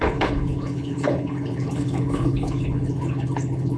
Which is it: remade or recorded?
remade